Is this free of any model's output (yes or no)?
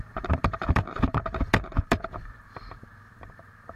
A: no